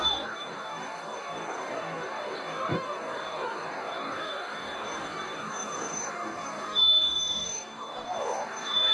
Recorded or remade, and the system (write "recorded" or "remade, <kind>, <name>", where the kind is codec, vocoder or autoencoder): remade, codec, DAC